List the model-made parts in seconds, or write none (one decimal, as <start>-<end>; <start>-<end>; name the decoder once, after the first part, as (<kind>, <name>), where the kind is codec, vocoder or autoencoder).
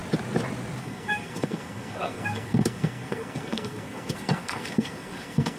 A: 0.8-5.6 (codec, SNAC)